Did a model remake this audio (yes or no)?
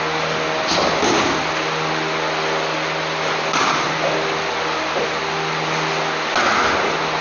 no